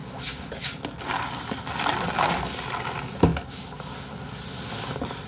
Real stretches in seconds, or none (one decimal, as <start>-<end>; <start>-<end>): 0.0-5.3